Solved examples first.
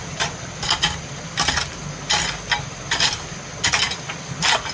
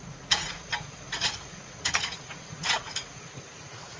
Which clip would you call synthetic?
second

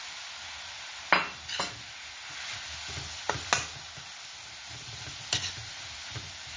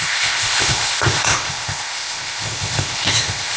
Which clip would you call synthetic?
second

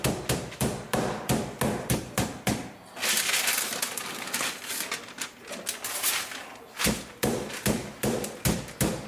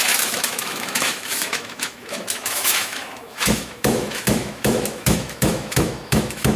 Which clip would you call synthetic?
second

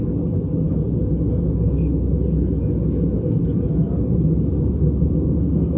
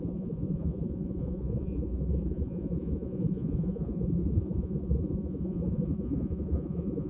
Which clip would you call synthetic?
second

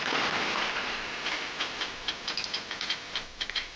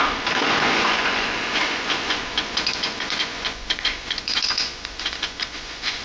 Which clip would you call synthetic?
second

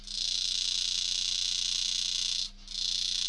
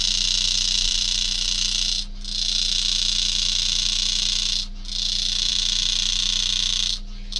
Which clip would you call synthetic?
second